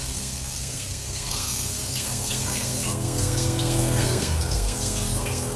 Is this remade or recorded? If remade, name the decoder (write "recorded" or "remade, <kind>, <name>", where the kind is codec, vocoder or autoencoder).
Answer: remade, codec, SNAC